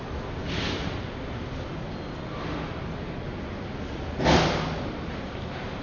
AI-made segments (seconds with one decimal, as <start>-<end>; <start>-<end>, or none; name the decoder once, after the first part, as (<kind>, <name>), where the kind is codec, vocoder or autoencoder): none